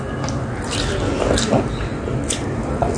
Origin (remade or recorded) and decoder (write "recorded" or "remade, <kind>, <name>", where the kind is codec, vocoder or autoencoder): recorded